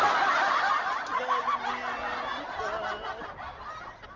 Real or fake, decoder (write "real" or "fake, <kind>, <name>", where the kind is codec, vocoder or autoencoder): real